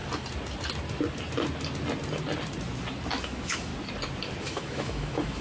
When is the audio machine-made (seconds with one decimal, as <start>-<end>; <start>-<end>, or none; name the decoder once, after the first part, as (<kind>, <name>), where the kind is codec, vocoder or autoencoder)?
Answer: 3.2-3.7 (autoencoder, DAC-VAE); 4.4-5.4